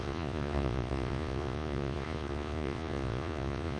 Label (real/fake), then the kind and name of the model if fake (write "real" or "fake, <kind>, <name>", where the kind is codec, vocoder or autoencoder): fake, vocoder, Vocos